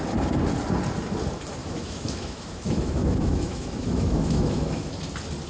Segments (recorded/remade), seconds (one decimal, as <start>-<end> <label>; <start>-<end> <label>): 0.0-1.6 recorded; 1.6-4.9 remade; 4.9-5.5 recorded